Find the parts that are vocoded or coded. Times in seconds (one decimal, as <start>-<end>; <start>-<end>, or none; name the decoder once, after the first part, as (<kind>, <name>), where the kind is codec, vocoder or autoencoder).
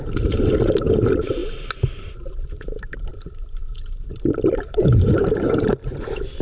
0.0-6.4 (vocoder, BigVGAN v2)